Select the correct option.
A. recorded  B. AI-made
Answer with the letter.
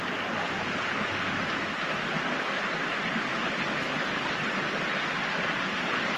A